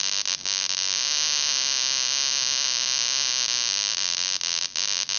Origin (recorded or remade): recorded